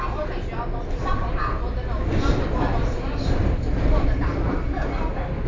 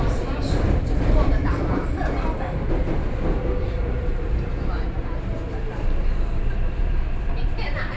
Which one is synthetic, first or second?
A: second